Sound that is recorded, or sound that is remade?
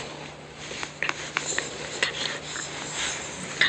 recorded